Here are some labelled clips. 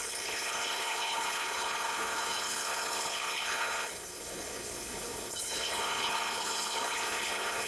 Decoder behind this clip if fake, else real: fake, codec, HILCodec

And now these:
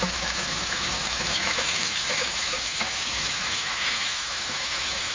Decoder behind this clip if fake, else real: fake, autoencoder, DAC-VAE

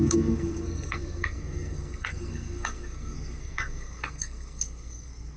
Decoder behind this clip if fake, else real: fake, codec, SNAC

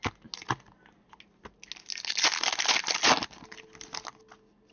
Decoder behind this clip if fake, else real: real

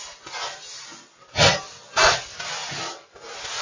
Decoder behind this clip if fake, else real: real